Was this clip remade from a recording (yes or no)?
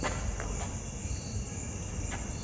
no